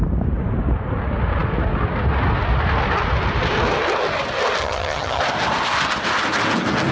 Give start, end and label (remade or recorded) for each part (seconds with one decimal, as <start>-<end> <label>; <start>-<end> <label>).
0.0-4.6 recorded; 4.6-5.2 remade; 5.2-6.9 recorded